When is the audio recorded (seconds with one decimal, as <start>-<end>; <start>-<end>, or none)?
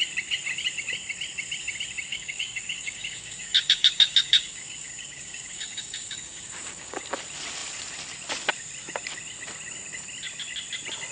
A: 0.0-2.1; 7.0-11.1